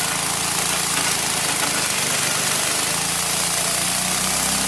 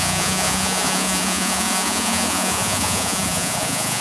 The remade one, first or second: second